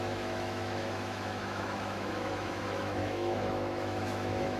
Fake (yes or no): yes